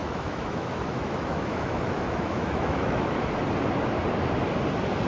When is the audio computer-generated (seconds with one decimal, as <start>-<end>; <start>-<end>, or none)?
0.0-3.1